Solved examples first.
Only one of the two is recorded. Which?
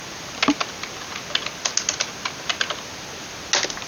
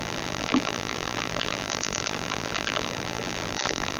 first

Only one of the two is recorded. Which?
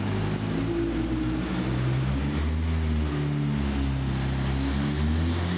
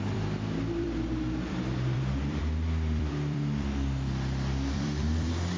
first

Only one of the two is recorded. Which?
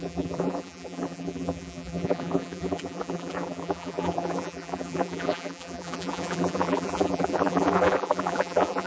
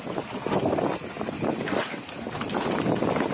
second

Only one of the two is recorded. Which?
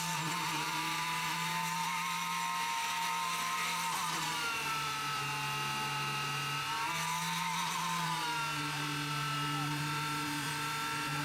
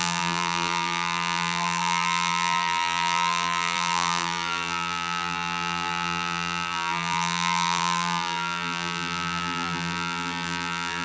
first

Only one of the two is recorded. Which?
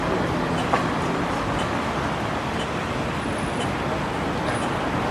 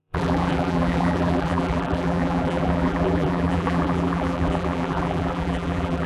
first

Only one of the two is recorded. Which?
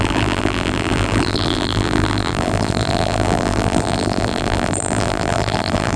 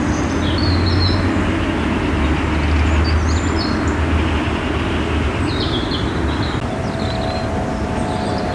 second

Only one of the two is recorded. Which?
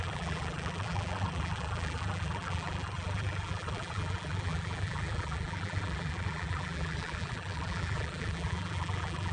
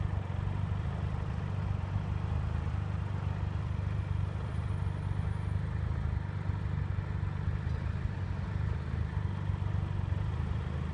second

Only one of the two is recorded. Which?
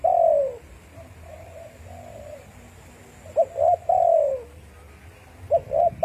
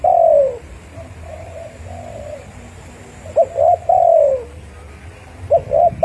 first